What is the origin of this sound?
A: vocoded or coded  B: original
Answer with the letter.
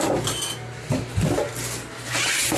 B